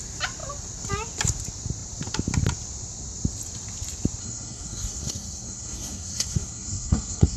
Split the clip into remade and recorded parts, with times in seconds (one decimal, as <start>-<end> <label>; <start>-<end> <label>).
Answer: 0.0-4.2 recorded; 4.2-7.4 remade